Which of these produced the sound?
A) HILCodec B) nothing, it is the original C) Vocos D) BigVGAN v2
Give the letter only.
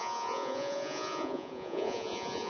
C